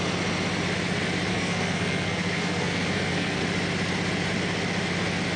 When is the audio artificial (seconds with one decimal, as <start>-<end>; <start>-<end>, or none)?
1.3-3.4

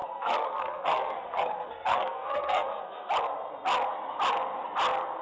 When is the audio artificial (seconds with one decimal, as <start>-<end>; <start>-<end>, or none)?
0.0-3.1

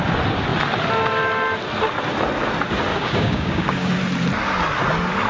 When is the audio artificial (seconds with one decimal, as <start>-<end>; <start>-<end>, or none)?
2.9-3.9

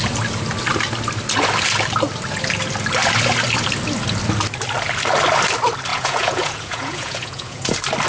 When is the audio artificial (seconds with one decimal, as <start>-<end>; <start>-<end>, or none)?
5.9-7.6

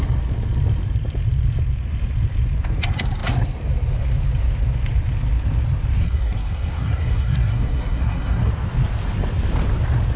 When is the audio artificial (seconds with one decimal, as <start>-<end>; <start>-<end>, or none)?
6.0-8.5

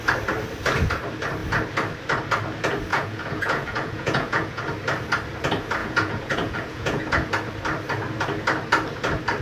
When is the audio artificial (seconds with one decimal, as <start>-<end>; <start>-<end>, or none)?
2.9-4.6; 5.8-7.3